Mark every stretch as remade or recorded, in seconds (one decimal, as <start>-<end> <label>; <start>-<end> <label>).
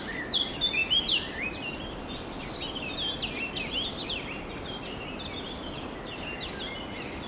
0.0-7.3 recorded